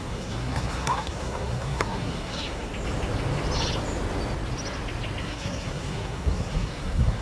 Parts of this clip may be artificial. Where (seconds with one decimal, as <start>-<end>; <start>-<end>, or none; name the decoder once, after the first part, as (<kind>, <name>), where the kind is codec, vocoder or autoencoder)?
0.0-2.7 (codec, SNAC); 5.2-7.2